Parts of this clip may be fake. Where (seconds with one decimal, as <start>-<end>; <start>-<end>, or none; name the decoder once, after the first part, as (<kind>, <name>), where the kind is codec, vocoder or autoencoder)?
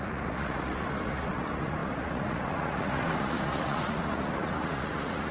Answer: 0.0-5.3 (vocoder, Vocos)